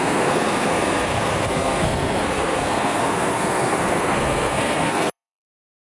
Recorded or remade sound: remade